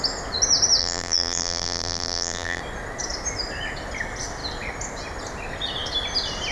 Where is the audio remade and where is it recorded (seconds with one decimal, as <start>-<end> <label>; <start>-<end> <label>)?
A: 0.0-0.8 recorded; 0.8-2.6 remade; 2.6-6.5 recorded

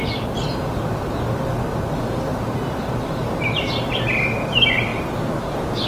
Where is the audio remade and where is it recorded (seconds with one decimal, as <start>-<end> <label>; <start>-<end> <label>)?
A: 0.0-1.2 remade; 1.2-2.3 recorded; 2.3-3.7 remade; 3.7-5.9 recorded

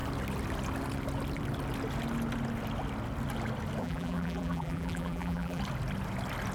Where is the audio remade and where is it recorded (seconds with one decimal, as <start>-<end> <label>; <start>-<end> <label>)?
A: 0.0-3.8 recorded; 3.8-5.6 remade; 5.6-6.5 recorded

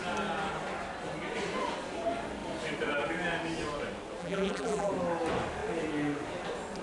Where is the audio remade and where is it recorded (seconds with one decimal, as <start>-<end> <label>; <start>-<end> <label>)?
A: 0.0-4.2 recorded; 4.2-4.9 remade; 4.9-6.8 recorded

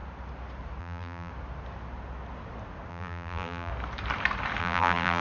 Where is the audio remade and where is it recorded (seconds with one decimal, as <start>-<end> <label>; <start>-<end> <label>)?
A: 0.0-0.8 recorded; 0.8-1.3 remade; 1.3-2.9 recorded; 2.9-3.7 remade; 3.7-4.6 recorded; 4.6-5.2 remade

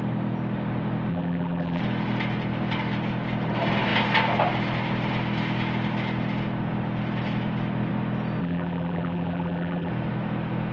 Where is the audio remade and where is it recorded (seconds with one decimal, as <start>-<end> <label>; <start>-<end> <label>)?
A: 0.0-1.1 recorded; 1.1-1.8 remade; 1.8-8.4 recorded; 8.4-9.9 remade; 9.9-10.7 recorded

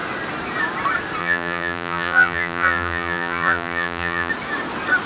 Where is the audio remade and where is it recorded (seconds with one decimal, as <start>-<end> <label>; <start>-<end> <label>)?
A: 0.0-1.2 recorded; 1.2-4.3 remade; 4.3-5.1 recorded

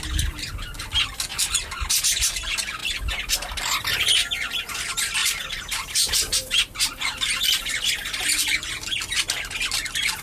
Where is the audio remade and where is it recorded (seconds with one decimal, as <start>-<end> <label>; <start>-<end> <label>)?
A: 0.0-5.2 recorded; 5.2-7.8 remade; 7.8-10.2 recorded